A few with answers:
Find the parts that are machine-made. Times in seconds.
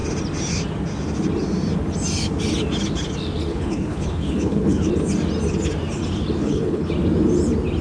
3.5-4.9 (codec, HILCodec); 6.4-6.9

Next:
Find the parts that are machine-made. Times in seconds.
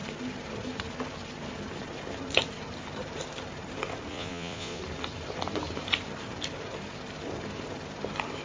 4.1-4.8 (vocoder, Vocos)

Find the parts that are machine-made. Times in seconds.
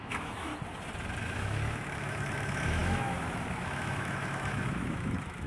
0.0-0.5 (autoencoder, DAC-VAE); 1.2-5.5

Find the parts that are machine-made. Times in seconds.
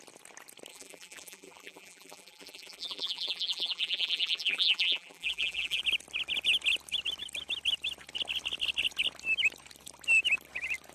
0.7-5.8 (vocoder, BigVGAN v2)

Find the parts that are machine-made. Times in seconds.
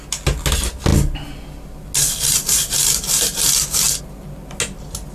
none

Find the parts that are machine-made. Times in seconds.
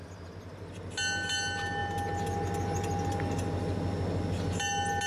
none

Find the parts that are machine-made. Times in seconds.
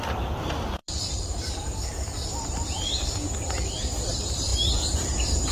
0.0-5.5 (vocoder, BigVGAN v2)